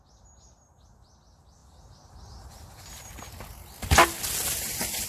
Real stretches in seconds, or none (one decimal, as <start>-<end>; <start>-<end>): 0.0-5.1

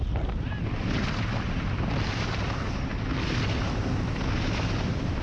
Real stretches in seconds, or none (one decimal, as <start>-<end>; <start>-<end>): 0.0-5.2

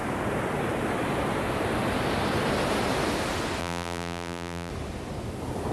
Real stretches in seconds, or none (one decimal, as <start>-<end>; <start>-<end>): 0.0-3.6; 4.7-5.7

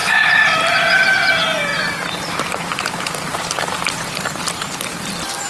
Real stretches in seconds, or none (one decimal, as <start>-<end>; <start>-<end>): 0.0-1.7; 4.1-5.5

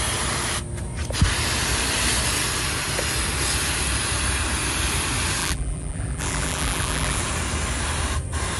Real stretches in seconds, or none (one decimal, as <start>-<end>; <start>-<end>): 0.0-5.4; 7.2-8.6

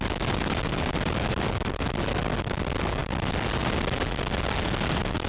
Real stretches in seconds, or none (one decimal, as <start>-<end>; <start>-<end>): 0.0-5.3

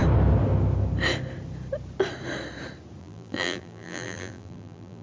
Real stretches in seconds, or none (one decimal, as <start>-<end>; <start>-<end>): 0.0-3.0